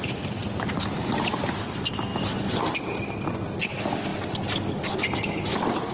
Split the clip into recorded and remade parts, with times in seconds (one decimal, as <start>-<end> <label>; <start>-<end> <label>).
0.0-5.9 recorded